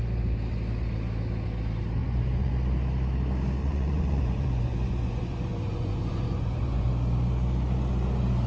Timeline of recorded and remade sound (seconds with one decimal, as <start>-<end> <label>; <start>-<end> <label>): 0.0-2.0 recorded; 2.0-2.5 remade; 2.5-3.6 recorded; 3.6-6.9 remade; 6.9-8.5 recorded